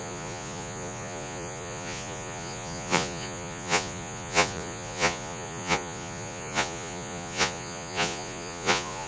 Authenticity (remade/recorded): remade